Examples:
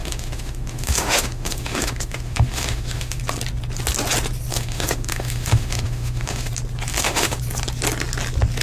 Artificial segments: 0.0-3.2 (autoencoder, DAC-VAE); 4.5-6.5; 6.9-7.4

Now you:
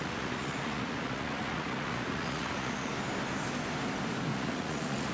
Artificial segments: 0.0-2.9 (vocoder, Vocos); 4.3-5.1

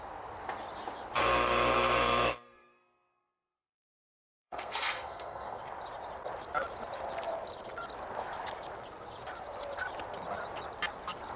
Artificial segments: 1.2-5.6 (codec, SNAC)

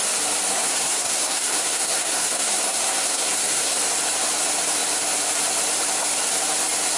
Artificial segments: 0.5-3.8 (codec, SNAC)

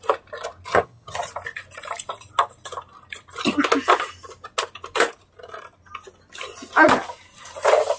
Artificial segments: 0.7-1.3 (vocoder, HiFi-GAN)